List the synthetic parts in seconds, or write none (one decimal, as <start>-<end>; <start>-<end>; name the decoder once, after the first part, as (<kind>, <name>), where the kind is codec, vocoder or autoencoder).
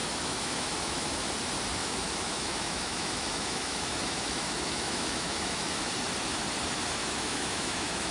0.0-1.3 (autoencoder, DAC-VAE); 1.8-5.9; 7.0-8.1